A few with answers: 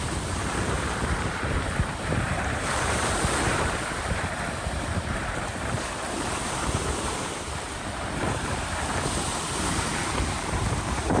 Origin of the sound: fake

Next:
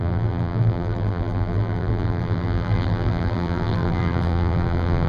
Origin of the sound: fake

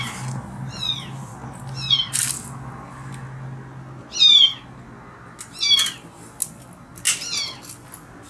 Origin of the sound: real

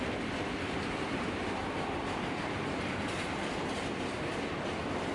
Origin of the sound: fake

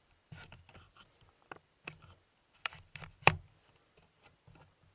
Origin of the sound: fake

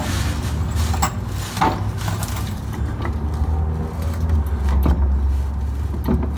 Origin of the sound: real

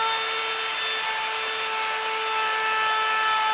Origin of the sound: real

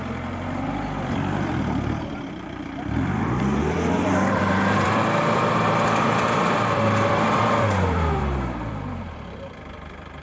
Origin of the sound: fake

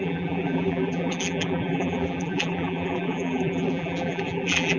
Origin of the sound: fake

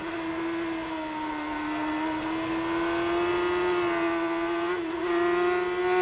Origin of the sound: real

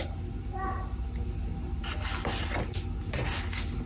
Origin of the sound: real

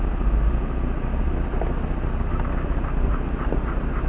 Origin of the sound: real